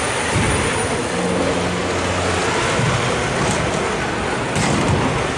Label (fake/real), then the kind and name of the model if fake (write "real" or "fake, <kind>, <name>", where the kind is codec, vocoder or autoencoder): real